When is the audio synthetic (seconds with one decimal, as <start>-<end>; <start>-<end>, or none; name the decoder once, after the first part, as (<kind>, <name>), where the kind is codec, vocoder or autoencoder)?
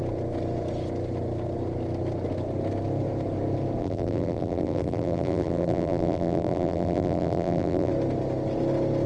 3.8-7.9 (vocoder, BigVGAN v2)